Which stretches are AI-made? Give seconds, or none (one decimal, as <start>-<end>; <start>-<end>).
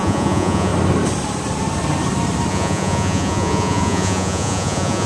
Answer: 0.0-0.7; 2.5-5.1